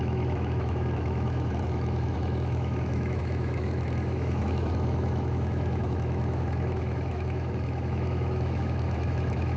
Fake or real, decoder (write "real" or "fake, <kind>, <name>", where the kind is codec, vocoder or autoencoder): fake, autoencoder, DAC-VAE